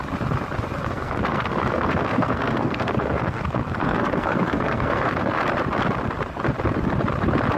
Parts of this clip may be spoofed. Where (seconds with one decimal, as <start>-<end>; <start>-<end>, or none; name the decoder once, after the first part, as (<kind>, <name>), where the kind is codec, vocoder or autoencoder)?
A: 0.8-5.4 (codec, SNAC)